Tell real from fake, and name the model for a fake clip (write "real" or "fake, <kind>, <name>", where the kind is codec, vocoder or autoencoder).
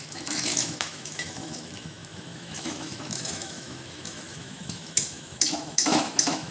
fake, autoencoder, DAC-VAE